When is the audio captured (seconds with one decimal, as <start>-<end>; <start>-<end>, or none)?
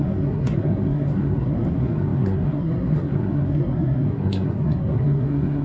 none